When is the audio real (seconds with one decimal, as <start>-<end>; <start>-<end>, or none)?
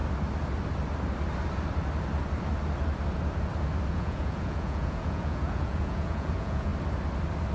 0.0-3.9; 6.7-7.5